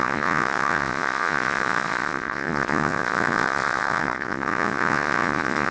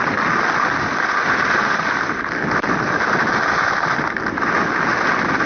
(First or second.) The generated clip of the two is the first